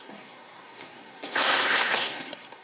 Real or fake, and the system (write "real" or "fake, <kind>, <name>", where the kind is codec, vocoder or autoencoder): fake, codec, SNAC